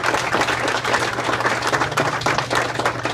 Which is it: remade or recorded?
recorded